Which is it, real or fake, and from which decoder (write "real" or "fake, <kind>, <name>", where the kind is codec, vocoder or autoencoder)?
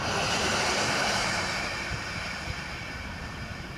fake, vocoder, BigVGAN v2